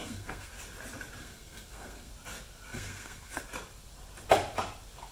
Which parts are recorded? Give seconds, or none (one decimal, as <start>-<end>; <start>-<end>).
0.5-1.2; 2.1-2.7; 3.4-5.1